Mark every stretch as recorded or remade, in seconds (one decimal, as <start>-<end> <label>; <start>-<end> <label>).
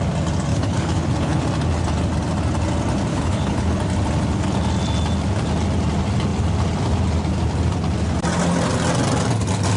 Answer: 0.0-0.5 recorded; 0.5-1.4 remade; 1.4-3.1 recorded; 3.1-3.8 remade; 3.8-9.8 recorded